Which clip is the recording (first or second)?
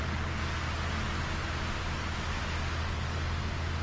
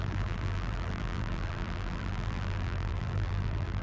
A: first